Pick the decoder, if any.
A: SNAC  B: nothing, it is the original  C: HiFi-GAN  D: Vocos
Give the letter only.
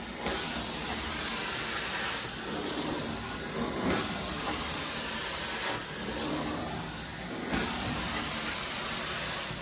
B